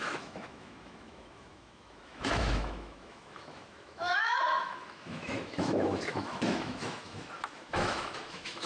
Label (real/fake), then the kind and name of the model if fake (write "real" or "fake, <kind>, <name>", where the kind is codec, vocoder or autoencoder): fake, autoencoder, DAC-VAE